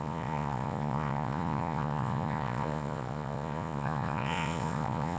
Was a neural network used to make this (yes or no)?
yes